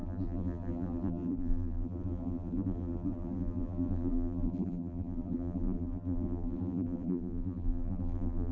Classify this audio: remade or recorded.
remade